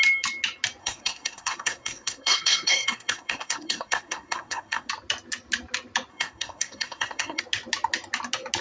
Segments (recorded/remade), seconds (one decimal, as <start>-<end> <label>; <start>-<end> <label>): 0.0-0.8 recorded; 0.8-4.9 remade; 4.9-6.1 recorded; 6.1-7.4 remade; 7.4-8.6 recorded